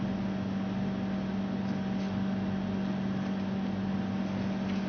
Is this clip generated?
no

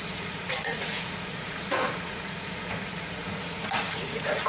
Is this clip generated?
yes